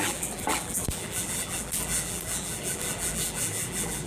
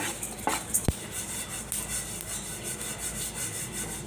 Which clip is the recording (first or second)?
second